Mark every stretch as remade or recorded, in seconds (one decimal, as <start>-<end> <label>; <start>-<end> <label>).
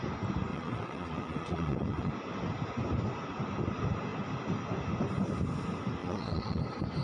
0.0-0.5 recorded; 0.5-2.1 remade; 2.1-6.0 recorded; 6.0-6.6 remade; 6.6-7.0 recorded